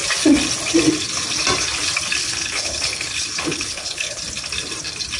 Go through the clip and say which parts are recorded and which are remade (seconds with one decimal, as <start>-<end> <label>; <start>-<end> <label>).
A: 0.0-2.2 recorded; 2.2-4.2 remade; 4.2-5.2 recorded